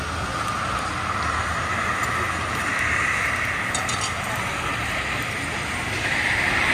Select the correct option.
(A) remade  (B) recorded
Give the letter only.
B